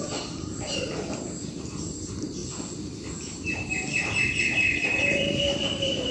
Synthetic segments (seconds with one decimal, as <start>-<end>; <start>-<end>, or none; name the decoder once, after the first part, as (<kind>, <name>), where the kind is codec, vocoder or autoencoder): 0.0-2.4 (vocoder, BigVGAN v2); 3.0-6.1